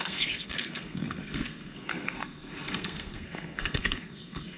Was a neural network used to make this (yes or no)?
yes